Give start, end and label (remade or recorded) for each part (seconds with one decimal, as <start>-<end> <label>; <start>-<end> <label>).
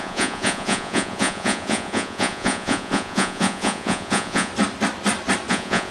0.0-4.5 remade; 4.5-5.5 recorded; 5.5-5.9 remade